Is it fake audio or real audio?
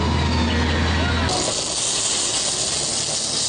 real